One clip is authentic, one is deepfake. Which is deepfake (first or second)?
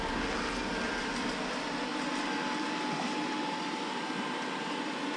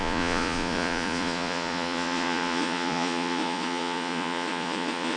second